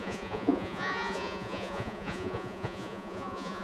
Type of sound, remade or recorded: remade